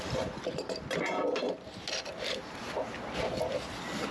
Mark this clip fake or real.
real